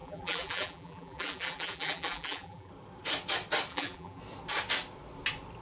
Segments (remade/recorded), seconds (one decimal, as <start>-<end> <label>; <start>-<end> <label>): 0.0-2.7 remade; 2.7-3.7 recorded; 3.7-4.2 remade; 4.2-5.6 recorded